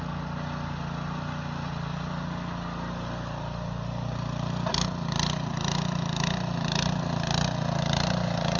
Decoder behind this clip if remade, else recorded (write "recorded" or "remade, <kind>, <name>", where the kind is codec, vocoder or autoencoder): recorded